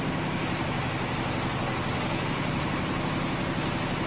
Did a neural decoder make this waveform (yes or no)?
no